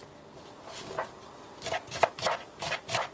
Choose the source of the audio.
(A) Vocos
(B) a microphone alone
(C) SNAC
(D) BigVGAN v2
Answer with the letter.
B